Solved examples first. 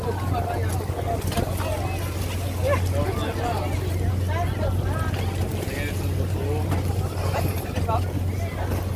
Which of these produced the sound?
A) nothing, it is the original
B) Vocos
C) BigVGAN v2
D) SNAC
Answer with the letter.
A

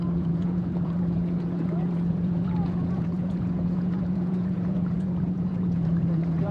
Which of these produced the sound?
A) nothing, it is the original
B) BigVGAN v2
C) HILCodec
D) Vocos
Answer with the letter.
D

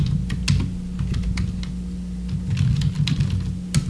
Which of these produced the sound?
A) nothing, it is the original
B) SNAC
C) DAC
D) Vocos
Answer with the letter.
A